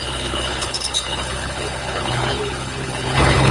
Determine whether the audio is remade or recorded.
remade